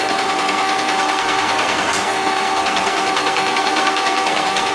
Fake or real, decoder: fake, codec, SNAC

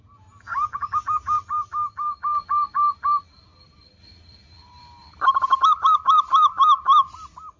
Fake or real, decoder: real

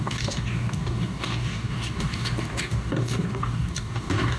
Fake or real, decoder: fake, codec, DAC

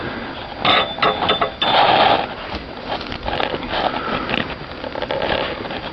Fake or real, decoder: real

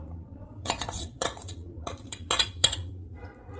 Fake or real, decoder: fake, vocoder, Vocos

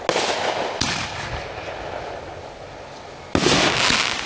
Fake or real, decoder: real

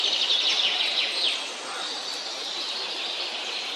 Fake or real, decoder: real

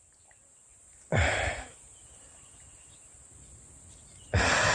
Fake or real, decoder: real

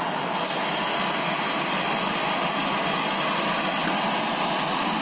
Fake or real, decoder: real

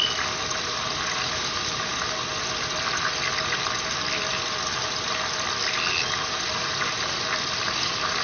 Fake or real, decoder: real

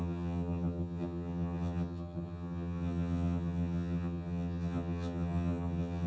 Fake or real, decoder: fake, vocoder, HiFi-GAN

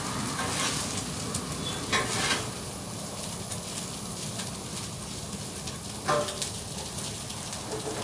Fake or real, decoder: real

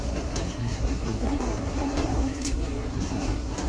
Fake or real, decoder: fake, codec, SNAC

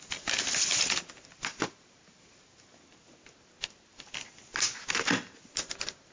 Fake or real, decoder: real